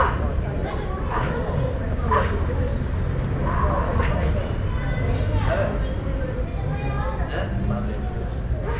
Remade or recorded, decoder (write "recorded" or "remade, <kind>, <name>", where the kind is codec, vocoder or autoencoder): recorded